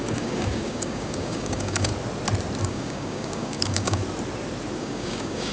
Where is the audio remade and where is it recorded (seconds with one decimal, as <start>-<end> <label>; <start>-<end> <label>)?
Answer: 0.0-1.9 remade; 1.9-2.6 recorded; 2.6-4.0 remade; 4.0-4.8 recorded; 4.8-5.5 remade

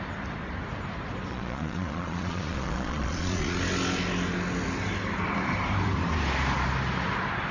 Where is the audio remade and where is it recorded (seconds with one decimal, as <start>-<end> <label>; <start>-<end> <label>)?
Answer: 0.0-1.3 recorded; 1.3-3.6 remade; 3.6-7.5 recorded

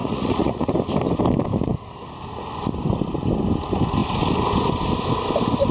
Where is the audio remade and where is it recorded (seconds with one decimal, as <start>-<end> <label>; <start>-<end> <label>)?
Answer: 0.0-0.7 remade; 0.7-5.7 recorded

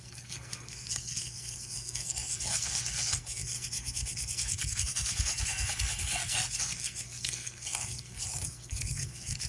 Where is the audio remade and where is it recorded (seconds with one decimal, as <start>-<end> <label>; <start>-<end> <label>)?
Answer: 0.0-9.5 remade